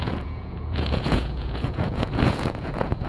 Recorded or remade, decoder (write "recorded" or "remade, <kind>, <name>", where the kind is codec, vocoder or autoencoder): remade, vocoder, Vocos